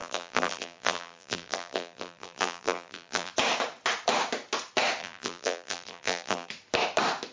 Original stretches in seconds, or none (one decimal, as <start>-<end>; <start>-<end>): 3.3-5.0; 6.5-7.3